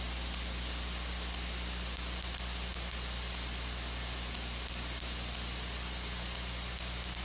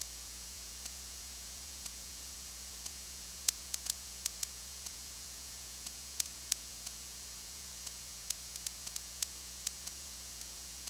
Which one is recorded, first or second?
first